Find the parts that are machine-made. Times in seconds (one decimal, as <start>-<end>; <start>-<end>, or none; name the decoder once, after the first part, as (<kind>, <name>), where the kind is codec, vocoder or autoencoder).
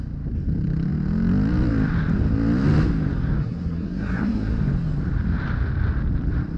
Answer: 3.4-4.5 (codec, SNAC)